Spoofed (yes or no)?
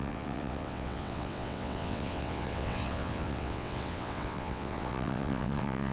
yes